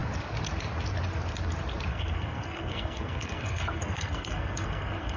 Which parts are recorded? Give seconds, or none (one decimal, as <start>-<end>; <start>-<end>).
0.0-1.9